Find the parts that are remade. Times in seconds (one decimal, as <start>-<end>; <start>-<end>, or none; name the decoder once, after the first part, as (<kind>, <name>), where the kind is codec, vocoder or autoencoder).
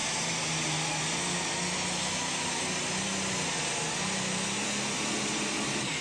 none